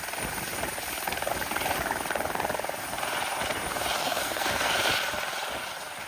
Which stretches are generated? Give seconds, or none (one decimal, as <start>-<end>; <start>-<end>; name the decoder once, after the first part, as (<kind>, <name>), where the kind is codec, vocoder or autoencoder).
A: 4.0-4.9 (codec, SNAC)